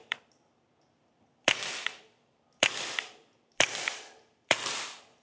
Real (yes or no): no